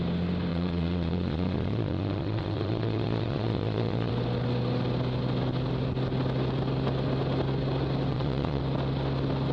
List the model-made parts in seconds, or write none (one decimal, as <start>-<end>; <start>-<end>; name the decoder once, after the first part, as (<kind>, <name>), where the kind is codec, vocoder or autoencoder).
0.5-4.1 (vocoder, Vocos); 8.1-8.6